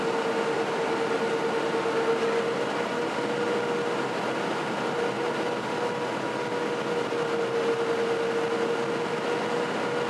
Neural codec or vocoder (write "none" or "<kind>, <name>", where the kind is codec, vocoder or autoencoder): none